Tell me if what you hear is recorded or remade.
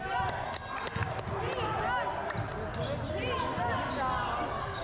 recorded